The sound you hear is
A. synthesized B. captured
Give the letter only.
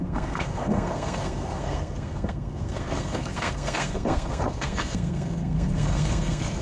A